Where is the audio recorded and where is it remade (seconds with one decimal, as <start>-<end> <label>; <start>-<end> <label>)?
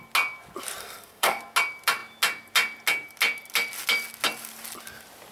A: 0.0-0.8 recorded; 0.8-1.4 remade; 1.4-5.3 recorded